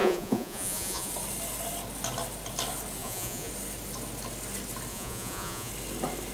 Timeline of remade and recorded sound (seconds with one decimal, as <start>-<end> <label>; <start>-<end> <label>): 0.0-1.1 remade; 1.1-3.0 recorded; 3.0-3.5 remade; 3.5-4.9 recorded; 4.9-5.7 remade; 5.7-6.3 recorded